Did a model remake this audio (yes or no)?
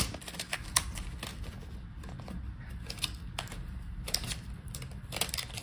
no